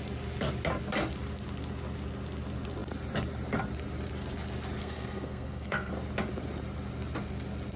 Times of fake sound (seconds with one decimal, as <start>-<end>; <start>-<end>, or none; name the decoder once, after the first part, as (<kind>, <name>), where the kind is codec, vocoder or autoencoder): 4.8-5.9 (codec, SNAC)